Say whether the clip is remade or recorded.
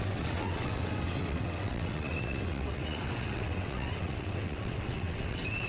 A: remade